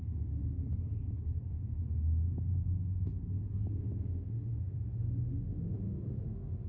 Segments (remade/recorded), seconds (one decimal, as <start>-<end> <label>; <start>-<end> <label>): 0.0-0.6 remade; 0.6-1.5 recorded; 1.5-3.1 remade; 3.1-3.8 recorded; 3.8-6.7 remade